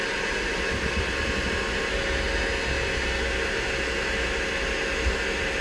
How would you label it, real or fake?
real